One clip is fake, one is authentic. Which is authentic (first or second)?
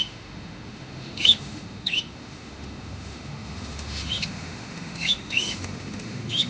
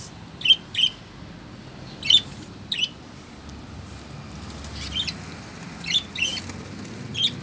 second